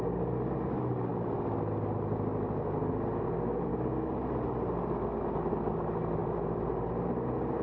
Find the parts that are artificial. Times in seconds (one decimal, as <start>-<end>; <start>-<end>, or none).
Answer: none